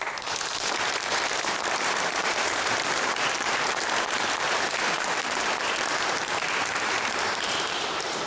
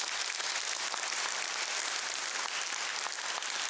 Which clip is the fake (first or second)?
first